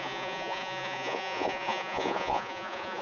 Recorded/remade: remade